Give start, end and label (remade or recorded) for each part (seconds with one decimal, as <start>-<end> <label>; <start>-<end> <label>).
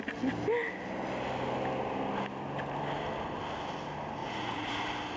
0.0-4.2 recorded; 4.2-4.8 remade; 4.8-5.2 recorded